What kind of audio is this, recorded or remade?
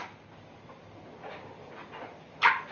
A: recorded